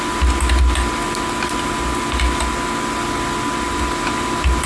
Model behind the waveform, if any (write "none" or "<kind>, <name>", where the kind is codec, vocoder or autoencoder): none